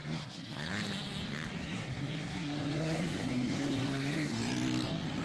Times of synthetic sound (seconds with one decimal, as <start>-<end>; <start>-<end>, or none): 0.0-0.7; 1.6-4.4